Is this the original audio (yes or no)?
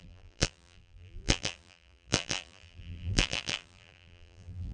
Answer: no